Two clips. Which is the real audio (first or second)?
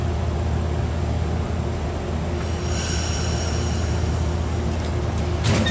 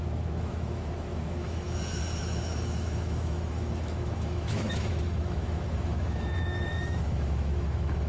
first